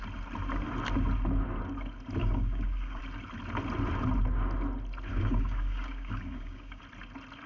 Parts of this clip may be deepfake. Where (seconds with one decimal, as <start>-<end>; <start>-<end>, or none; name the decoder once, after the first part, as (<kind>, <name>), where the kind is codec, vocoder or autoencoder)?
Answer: 2.2-3.0 (codec, DAC); 5.1-6.8